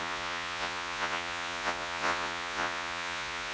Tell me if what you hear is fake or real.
fake